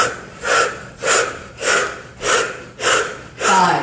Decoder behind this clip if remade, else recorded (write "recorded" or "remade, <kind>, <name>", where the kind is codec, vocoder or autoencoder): recorded